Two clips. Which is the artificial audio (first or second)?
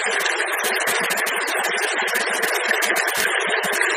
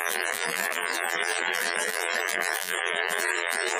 second